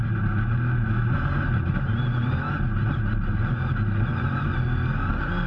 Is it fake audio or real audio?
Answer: real